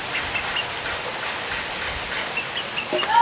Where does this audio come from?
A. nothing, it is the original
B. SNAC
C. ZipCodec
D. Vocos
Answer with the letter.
A